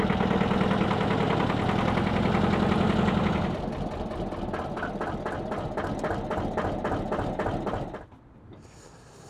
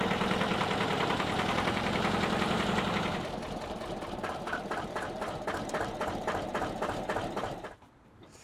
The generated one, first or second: second